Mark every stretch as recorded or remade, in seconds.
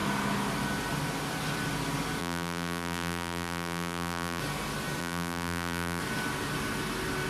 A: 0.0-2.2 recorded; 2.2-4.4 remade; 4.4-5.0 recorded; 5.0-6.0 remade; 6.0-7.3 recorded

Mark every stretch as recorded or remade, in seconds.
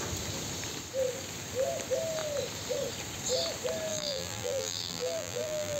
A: 0.0-3.9 recorded; 3.9-5.8 remade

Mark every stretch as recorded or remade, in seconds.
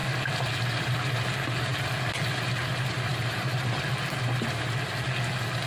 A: 0.0-1.0 remade; 1.0-1.7 recorded; 1.7-2.7 remade; 2.7-3.1 recorded; 3.1-3.9 remade; 3.9-5.7 recorded